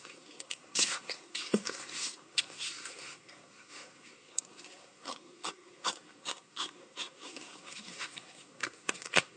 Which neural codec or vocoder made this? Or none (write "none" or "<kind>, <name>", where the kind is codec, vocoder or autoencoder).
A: codec, SNAC